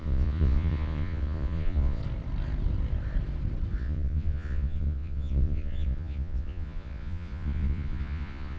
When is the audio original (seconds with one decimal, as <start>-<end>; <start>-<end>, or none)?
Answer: 2.0-3.8